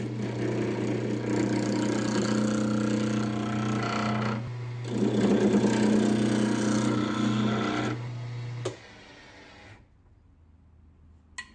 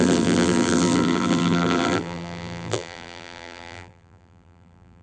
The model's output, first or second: second